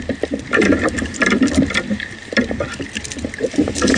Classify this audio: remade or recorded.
recorded